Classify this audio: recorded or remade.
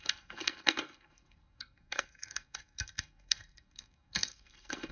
remade